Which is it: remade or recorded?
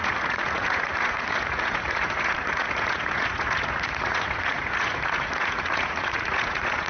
remade